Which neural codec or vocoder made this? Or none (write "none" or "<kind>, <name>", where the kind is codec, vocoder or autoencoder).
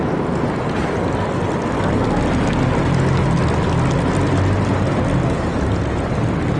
none